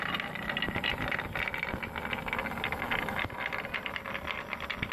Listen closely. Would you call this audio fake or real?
real